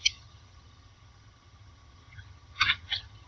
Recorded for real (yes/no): no